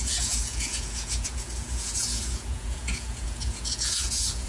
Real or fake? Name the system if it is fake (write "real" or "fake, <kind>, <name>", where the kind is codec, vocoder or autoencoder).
fake, vocoder, Vocos